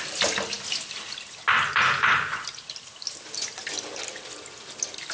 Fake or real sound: real